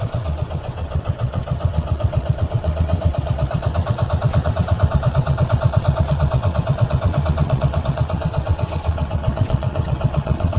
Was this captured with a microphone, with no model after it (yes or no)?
no